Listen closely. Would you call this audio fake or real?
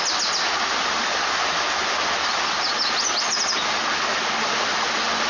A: real